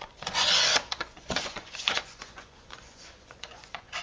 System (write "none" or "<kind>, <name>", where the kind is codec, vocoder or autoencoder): vocoder, Vocos